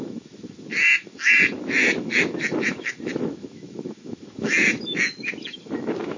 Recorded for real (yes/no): no